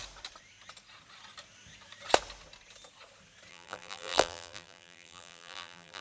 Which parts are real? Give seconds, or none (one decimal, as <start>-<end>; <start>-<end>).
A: 0.0-3.5